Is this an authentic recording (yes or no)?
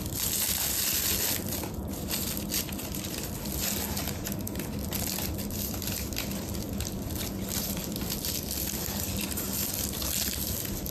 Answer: yes